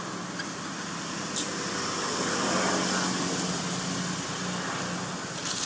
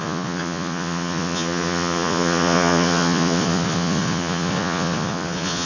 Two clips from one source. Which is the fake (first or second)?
second